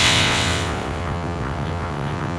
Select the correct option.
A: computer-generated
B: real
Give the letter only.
A